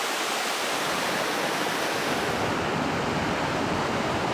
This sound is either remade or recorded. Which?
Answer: recorded